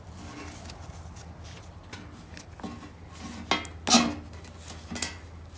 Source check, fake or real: real